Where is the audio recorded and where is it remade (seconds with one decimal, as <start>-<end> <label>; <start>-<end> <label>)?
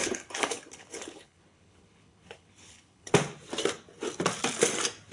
0.0-3.1 remade; 3.1-5.1 recorded